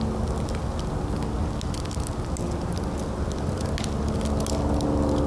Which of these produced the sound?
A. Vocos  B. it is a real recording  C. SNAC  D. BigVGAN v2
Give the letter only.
B